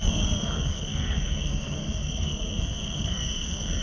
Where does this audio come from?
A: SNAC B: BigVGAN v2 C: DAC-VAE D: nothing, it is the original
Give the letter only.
A